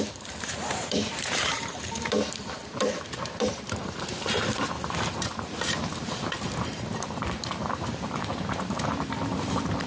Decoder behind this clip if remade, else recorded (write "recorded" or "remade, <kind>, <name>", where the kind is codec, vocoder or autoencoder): remade, vocoder, BigVGAN v2